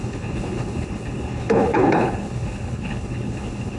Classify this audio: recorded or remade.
remade